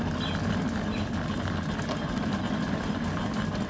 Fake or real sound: real